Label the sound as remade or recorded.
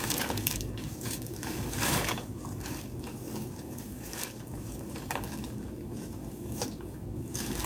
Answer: remade